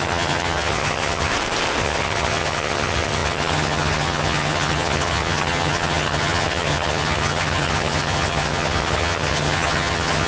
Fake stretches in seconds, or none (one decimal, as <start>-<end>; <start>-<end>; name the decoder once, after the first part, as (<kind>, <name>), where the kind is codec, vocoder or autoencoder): 0.0-1.3 (vocoder, HiFi-GAN); 1.8-10.3